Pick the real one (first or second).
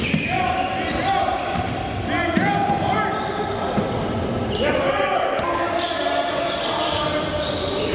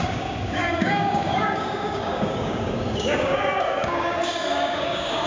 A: first